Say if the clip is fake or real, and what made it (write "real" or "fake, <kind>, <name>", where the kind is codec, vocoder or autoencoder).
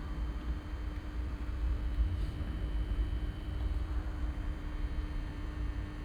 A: fake, vocoder, BigVGAN v2